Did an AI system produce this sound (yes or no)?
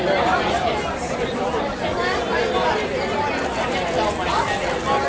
no